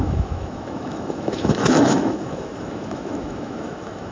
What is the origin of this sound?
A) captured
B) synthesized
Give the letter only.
B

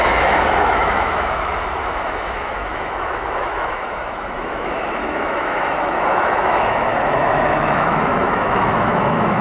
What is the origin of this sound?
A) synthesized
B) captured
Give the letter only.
A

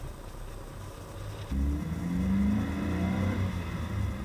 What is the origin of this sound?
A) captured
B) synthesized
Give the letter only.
A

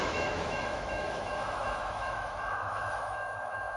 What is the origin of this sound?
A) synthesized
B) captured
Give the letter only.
A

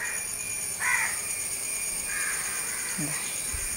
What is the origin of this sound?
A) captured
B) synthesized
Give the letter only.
A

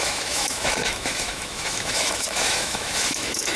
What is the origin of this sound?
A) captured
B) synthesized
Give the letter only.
B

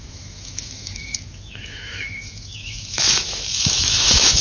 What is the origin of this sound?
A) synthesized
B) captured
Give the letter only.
A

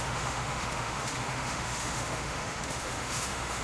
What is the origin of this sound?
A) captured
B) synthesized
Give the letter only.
B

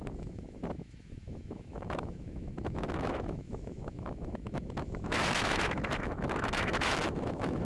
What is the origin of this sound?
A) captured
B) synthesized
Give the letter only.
B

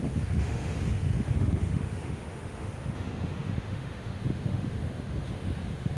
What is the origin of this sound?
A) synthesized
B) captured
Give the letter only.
A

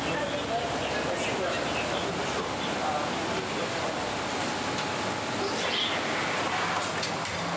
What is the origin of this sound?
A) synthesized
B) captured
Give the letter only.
B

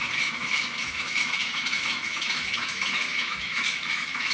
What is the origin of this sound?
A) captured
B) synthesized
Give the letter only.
B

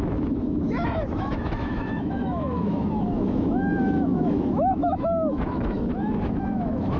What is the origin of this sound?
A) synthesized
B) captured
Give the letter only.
A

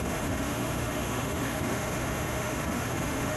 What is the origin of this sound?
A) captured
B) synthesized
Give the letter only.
B